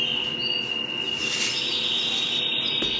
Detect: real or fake real